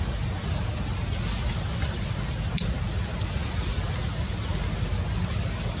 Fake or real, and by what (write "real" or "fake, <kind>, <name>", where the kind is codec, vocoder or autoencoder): real